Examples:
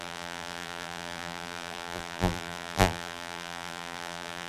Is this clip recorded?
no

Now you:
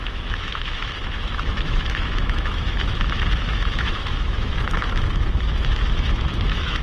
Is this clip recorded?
no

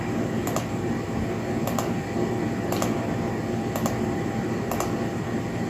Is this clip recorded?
yes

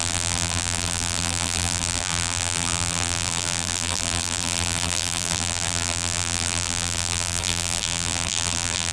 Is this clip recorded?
no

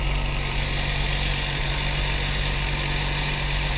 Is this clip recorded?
yes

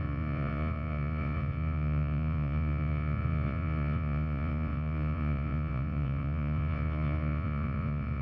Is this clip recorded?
no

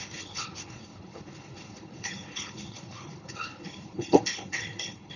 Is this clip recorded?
no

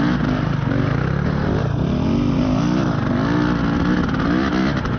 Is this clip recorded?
yes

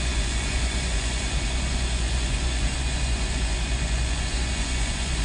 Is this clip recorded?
no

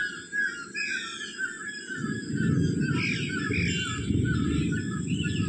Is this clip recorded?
yes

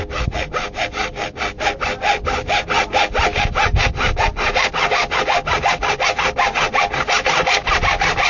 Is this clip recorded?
yes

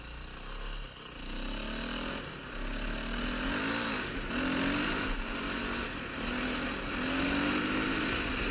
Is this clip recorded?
yes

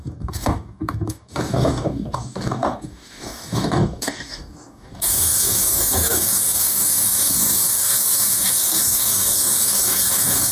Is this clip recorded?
no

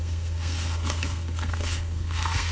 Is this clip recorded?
no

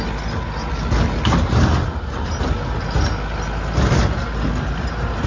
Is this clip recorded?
yes